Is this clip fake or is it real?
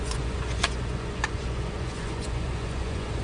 fake